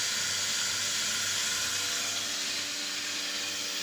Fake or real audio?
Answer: real